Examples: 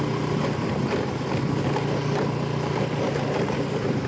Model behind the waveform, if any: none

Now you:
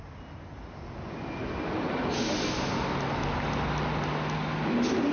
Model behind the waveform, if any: none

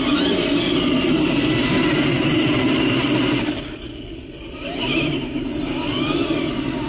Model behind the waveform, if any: none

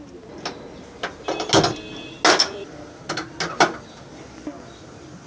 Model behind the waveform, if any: none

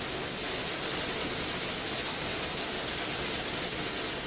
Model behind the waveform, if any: none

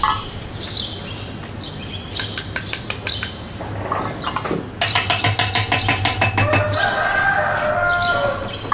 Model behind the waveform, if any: none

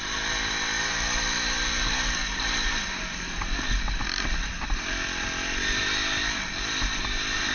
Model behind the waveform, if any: none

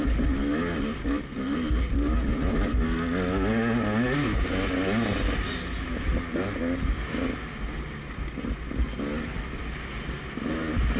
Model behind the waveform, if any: none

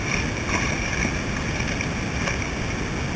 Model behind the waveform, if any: none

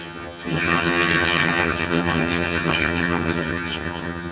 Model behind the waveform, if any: vocoder, HiFi-GAN